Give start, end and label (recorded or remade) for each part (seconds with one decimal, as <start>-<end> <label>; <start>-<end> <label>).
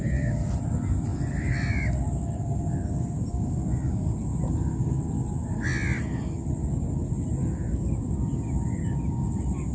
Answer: 0.0-9.7 recorded